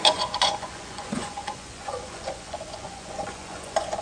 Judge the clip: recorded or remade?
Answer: remade